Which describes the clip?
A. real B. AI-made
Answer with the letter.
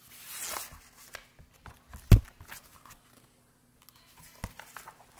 A